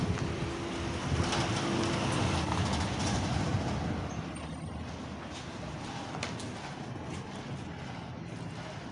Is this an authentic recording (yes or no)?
yes